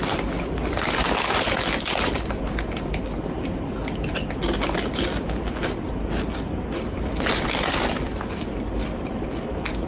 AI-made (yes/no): no